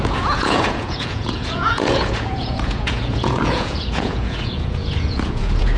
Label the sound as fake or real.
fake